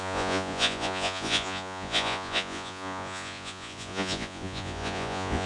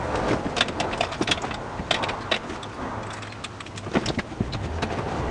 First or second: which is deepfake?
first